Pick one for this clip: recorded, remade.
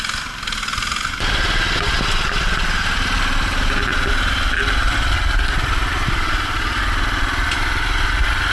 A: recorded